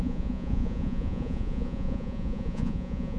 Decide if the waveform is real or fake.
fake